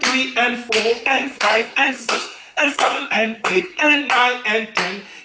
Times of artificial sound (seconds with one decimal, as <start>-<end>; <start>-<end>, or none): 0.9-4.0